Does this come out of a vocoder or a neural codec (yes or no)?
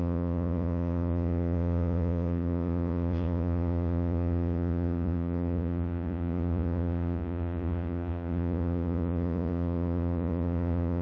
yes